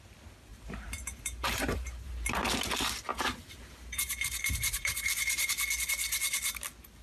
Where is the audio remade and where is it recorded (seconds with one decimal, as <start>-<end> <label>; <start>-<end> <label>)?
0.0-0.5 recorded; 0.5-2.3 remade; 2.3-3.1 recorded; 3.1-5.5 remade; 5.5-7.0 recorded